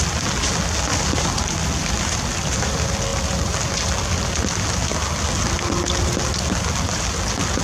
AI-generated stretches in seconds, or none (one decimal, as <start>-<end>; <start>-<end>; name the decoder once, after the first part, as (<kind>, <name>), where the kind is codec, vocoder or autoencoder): none